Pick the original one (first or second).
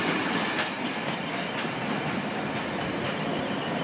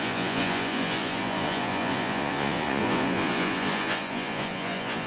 first